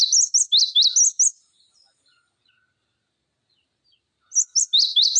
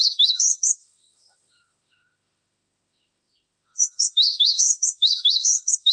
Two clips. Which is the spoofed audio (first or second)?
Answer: second